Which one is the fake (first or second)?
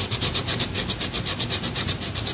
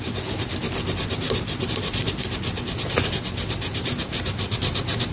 first